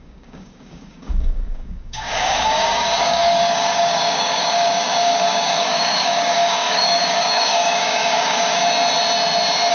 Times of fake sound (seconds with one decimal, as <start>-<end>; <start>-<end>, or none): 0.0-8.6